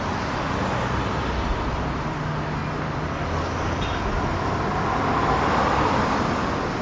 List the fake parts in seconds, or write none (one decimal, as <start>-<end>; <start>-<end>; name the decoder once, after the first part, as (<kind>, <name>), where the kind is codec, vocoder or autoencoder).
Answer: none